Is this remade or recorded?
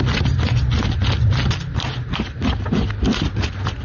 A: recorded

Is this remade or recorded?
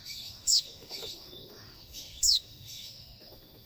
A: remade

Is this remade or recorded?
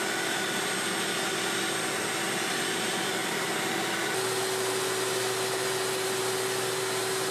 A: recorded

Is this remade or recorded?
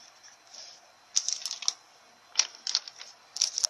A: recorded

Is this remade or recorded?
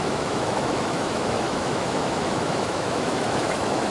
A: remade